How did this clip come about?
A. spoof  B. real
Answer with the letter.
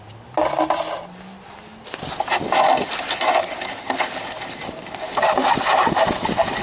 B